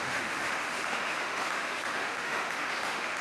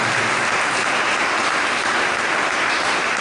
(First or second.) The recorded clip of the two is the second